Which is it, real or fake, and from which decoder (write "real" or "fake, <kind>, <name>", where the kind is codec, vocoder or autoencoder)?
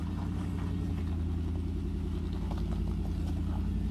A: real